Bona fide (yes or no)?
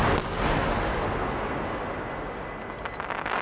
yes